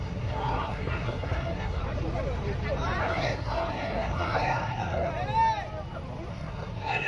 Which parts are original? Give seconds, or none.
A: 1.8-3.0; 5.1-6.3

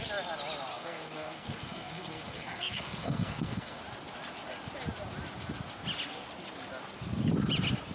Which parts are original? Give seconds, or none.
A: 0.0-0.7; 3.8-7.9

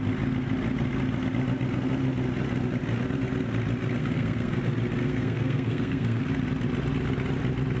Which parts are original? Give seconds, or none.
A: 0.0-4.0; 4.6-5.0; 6.2-7.8

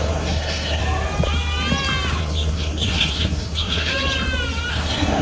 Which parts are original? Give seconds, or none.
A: 0.8-2.2; 3.9-4.7

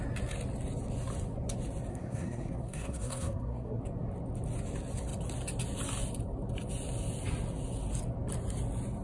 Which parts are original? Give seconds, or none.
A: 0.0-1.9; 3.8-9.0

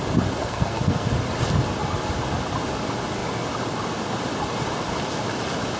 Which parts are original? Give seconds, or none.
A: 0.0-0.4; 1.1-5.8

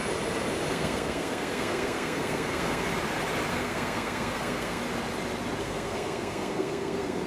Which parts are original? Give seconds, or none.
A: 0.0-0.7; 2.9-3.5; 4.8-5.6